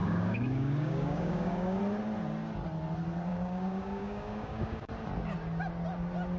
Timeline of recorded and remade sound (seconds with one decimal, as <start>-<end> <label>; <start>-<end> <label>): 0.0-1.8 remade; 1.8-3.3 recorded; 3.3-4.9 remade; 4.9-6.4 recorded